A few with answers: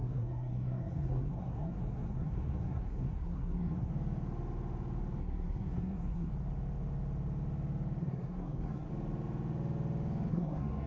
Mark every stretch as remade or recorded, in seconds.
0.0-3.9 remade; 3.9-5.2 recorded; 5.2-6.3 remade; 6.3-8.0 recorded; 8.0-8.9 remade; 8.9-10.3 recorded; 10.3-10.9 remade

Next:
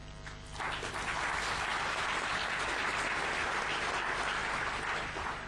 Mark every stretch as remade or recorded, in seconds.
0.0-5.5 recorded

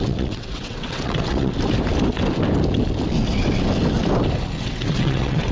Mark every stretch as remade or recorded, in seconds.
0.0-1.5 remade; 1.5-4.6 recorded; 4.6-5.5 remade

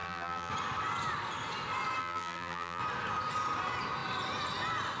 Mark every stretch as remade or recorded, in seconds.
0.0-0.5 remade; 0.5-2.0 recorded; 2.0-2.8 remade; 2.8-5.0 recorded

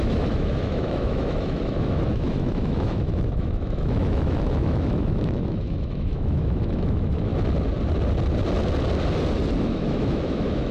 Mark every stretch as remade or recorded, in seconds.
0.0-7.3 remade; 7.3-9.6 recorded; 9.6-10.7 remade

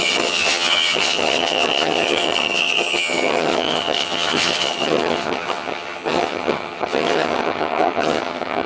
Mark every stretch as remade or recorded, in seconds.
0.0-8.7 remade

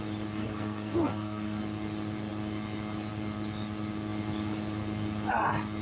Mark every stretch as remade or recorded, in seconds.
0.0-0.4 recorded; 0.4-1.6 remade; 1.6-5.8 recorded

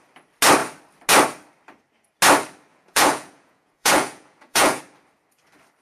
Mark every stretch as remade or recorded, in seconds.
0.0-2.7 recorded; 2.7-4.8 remade; 4.8-5.8 recorded